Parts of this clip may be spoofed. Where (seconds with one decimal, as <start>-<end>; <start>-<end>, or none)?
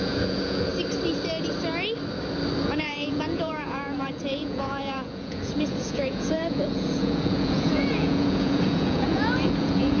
0.0-0.7; 2.6-10.0